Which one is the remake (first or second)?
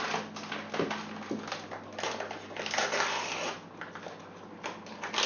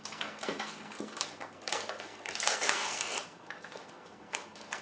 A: second